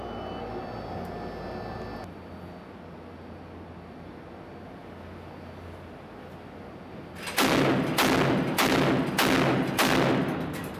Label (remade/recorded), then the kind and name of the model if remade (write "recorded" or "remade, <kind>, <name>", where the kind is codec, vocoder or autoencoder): recorded